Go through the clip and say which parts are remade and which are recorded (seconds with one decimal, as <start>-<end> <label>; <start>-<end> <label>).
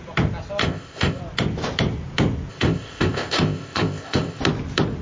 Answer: 0.0-0.6 recorded; 0.6-1.2 remade; 1.2-2.5 recorded; 2.5-4.4 remade; 4.4-5.0 recorded